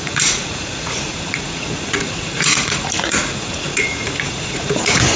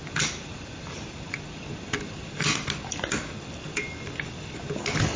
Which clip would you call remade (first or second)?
first